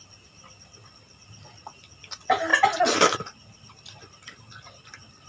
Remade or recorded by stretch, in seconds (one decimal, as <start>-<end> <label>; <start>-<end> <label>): 0.0-5.3 remade